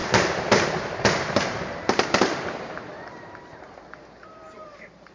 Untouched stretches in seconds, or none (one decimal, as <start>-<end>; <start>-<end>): none